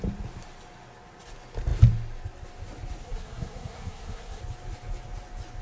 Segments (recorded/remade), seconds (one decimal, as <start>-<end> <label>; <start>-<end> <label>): 0.0-3.0 recorded; 3.0-4.4 remade; 4.4-5.6 recorded